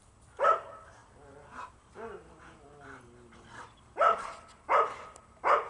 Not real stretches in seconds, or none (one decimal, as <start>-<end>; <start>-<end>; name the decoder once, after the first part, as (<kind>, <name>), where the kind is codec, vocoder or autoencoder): none